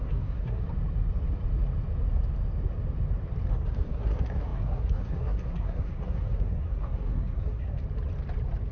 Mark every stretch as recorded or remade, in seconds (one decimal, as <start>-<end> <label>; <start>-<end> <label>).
0.0-0.6 remade; 0.6-3.5 recorded; 3.5-7.8 remade; 7.8-8.7 recorded